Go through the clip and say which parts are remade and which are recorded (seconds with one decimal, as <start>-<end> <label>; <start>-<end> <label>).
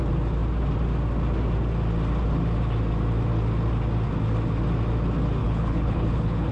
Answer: 0.0-5.4 recorded; 5.4-6.5 remade